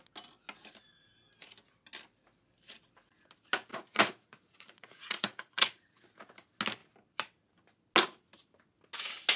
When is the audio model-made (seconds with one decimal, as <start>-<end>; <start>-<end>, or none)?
3.7-6.0